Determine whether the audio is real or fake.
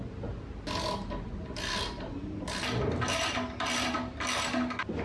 real